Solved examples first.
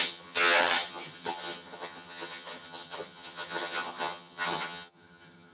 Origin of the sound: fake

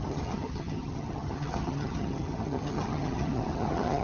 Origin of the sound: fake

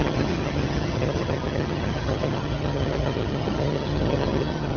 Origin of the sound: fake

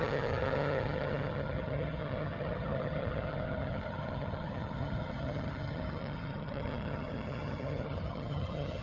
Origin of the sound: fake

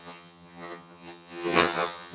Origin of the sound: fake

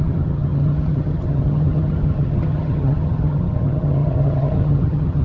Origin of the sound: fake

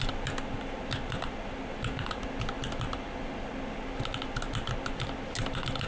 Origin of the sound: real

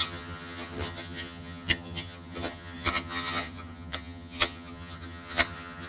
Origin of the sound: fake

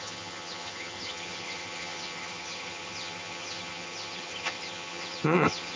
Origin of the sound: fake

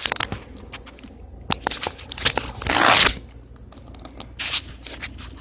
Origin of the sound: real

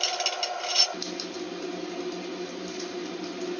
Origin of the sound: real